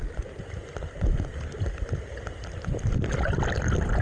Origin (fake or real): real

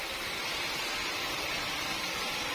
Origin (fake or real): real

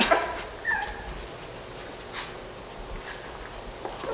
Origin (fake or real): real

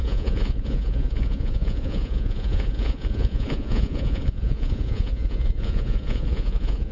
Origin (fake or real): fake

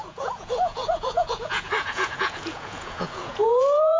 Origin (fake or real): fake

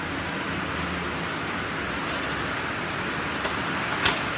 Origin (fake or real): real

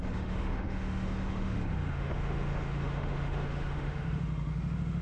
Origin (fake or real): fake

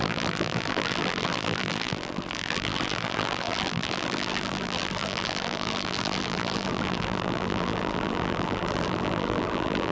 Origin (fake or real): fake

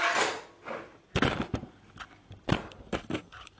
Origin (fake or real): real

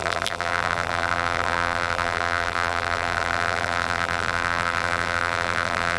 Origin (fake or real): fake